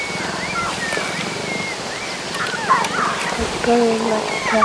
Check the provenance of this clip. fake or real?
real